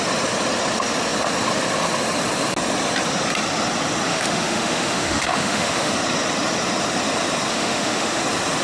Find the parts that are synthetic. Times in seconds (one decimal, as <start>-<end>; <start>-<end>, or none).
4.1-5.9; 7.5-8.2